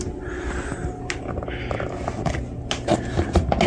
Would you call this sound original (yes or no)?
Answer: yes